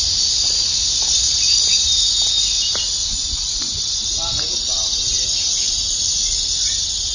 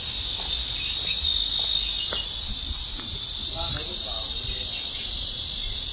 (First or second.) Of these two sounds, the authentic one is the second